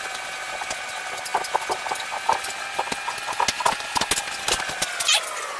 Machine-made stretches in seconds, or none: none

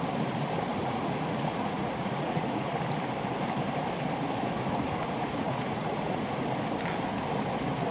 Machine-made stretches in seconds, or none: 0.8-2.7 (vocoder, Vocos); 5.0-6.4

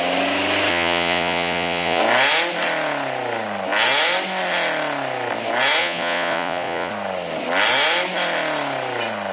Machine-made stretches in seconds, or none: 0.7-2.0 (vocoder, Vocos); 5.8-6.9